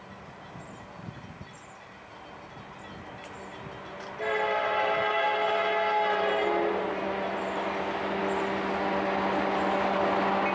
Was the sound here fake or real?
real